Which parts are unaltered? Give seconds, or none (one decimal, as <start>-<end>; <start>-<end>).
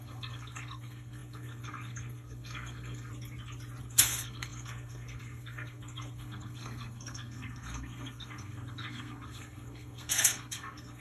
3.1-3.8